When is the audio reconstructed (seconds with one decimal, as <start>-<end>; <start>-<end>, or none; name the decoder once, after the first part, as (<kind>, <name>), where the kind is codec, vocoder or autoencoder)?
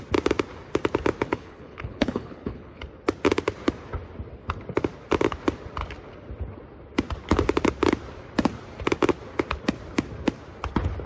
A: 1.3-2.8 (codec, HILCodec)